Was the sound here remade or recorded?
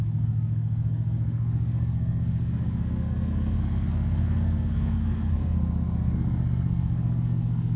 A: remade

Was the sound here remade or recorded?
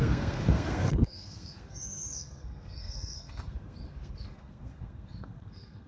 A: remade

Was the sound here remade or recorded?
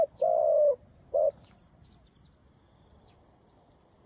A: recorded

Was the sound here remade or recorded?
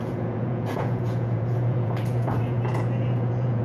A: remade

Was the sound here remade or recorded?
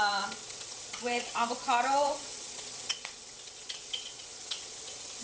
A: remade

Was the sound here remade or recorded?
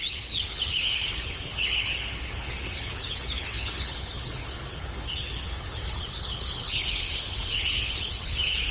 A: remade